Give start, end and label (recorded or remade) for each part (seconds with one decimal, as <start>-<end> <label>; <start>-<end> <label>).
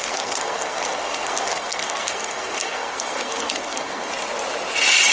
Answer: 0.0-4.1 remade; 4.1-5.1 recorded